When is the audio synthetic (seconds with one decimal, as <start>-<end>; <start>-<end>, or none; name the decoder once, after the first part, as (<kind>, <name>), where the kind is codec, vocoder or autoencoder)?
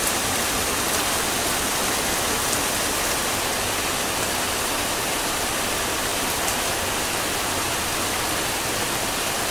6.1-6.7 (vocoder, BigVGAN v2)